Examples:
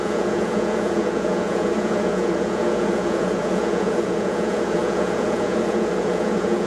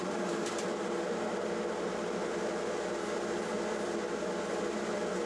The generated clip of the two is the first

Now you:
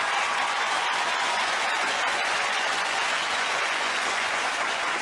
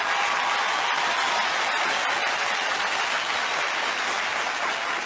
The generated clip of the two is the first